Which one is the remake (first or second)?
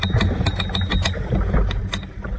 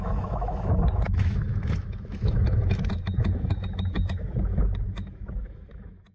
second